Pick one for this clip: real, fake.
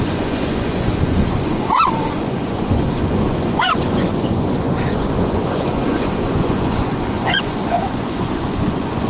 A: fake